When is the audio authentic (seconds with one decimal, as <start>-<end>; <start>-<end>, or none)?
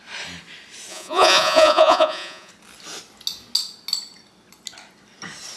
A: 0.0-0.9; 2.5-5.6